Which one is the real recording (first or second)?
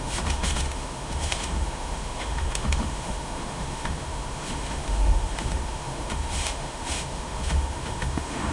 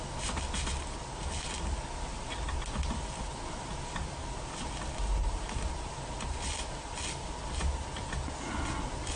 second